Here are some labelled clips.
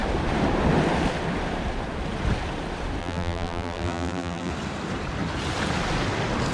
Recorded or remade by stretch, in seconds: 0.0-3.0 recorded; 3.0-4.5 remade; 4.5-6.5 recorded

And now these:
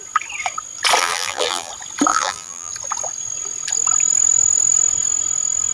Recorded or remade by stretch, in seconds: 0.0-1.0 recorded; 1.0-1.7 remade; 1.7-2.1 recorded; 2.1-2.7 remade; 2.7-5.7 recorded